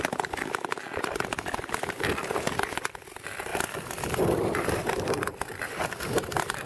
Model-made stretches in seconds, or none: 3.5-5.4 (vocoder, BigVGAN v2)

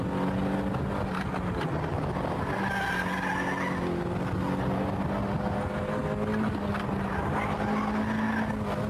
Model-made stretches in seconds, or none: none

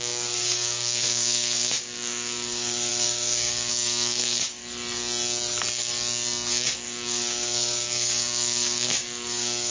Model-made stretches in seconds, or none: 0.0-4.6 (codec, DAC); 6.5-9.7

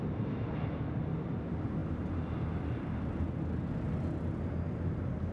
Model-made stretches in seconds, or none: none